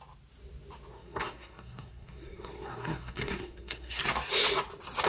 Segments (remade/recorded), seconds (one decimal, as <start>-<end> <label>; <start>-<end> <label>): 0.0-0.9 recorded; 0.9-4.0 remade; 4.0-5.1 recorded